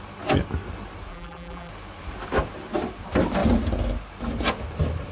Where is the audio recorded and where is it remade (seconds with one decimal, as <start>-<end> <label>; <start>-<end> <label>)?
0.0-1.1 recorded; 1.1-1.7 remade; 1.7-5.1 recorded